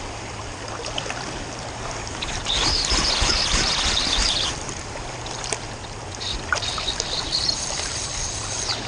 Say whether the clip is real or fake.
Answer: fake